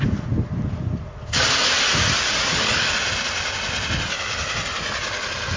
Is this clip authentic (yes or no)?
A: yes